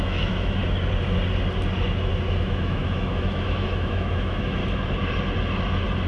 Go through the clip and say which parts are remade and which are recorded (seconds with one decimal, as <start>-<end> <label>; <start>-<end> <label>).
0.0-0.6 remade; 0.6-2.4 recorded; 2.4-4.6 remade; 4.6-6.1 recorded